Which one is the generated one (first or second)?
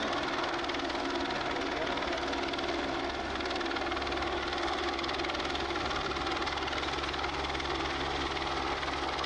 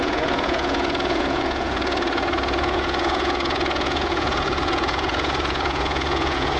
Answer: second